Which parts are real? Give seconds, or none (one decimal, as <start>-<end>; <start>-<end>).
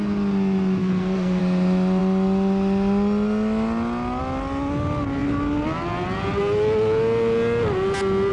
0.0-0.8; 1.4-8.3